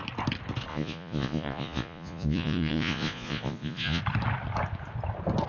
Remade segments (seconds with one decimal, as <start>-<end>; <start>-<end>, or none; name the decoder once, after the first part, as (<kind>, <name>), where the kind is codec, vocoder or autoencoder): 0.7-4.0 (vocoder, Vocos)